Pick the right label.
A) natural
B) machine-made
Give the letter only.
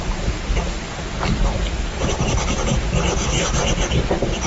A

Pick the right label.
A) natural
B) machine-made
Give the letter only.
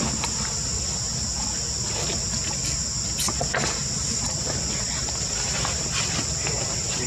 A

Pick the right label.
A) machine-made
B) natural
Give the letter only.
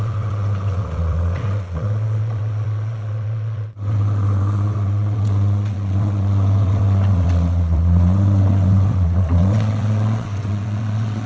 A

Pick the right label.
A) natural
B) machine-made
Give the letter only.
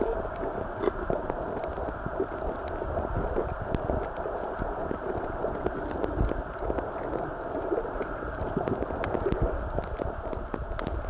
A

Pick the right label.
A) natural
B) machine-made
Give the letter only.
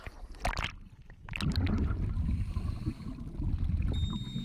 A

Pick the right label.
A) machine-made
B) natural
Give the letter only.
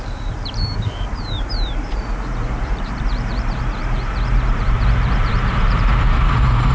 A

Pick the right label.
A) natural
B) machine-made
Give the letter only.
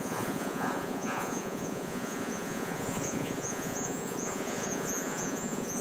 B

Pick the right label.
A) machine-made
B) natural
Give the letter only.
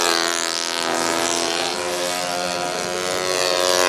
B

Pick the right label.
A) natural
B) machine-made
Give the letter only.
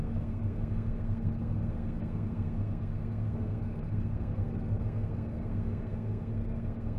B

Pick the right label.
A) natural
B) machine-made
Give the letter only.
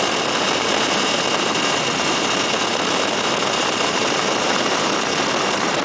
B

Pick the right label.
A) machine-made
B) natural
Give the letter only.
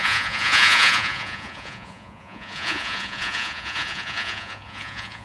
A